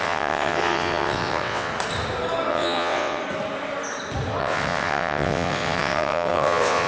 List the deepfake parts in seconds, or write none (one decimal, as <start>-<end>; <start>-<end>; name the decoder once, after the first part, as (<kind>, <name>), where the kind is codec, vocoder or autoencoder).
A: 0.0-1.7 (vocoder, WaveNeXt); 2.5-3.2; 4.4-6.9